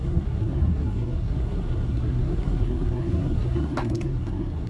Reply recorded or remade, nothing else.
remade